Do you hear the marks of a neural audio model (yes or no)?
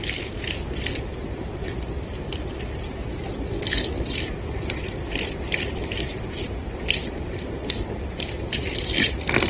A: yes